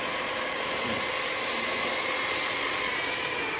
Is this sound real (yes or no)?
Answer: yes